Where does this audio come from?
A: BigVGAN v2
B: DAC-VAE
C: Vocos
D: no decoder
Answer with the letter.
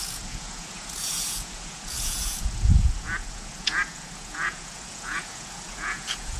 C